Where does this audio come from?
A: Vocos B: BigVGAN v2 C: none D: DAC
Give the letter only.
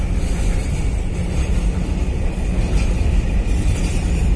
C